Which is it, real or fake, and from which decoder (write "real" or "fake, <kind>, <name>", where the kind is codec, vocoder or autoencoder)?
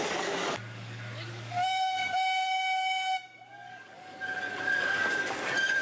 fake, codec, DAC